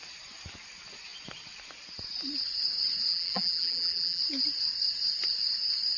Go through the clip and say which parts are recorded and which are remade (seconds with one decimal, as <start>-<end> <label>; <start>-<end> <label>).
0.0-3.1 recorded; 3.1-4.2 remade; 4.2-6.0 recorded